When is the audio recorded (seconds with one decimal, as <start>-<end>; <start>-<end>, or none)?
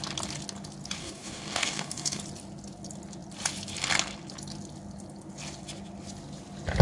0.0-1.0; 2.2-6.8